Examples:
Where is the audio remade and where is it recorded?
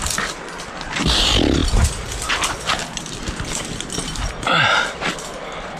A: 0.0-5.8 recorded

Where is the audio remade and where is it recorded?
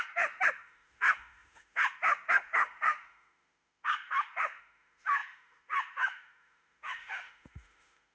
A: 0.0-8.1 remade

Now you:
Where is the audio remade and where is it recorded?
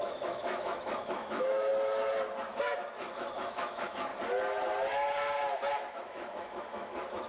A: 0.0-1.7 remade; 1.7-2.6 recorded; 2.6-4.1 remade; 4.1-5.9 recorded; 5.9-7.3 remade